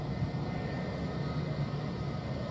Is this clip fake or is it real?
real